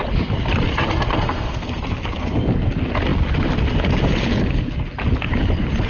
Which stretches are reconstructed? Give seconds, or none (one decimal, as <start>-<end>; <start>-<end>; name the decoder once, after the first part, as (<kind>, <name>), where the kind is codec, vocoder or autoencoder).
1.1-1.8 (codec, SNAC)